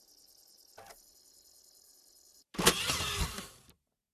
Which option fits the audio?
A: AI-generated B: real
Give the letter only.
B